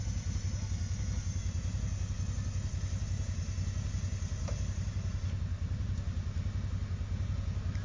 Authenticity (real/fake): real